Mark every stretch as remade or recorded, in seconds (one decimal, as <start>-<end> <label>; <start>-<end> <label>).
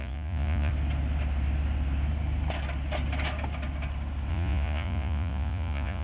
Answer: 0.0-0.7 remade; 0.7-4.3 recorded; 4.3-6.0 remade